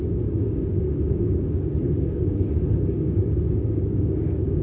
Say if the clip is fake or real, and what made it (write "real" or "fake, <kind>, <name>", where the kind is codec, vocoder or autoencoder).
fake, codec, DAC